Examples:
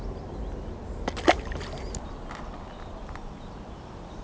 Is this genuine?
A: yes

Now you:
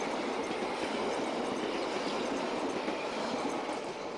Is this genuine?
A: yes